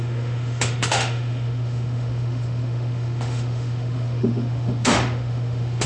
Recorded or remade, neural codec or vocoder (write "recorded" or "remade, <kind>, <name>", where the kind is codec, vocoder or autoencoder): remade, autoencoder, DAC-VAE